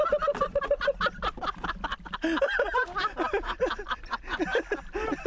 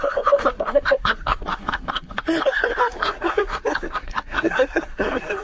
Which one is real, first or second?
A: first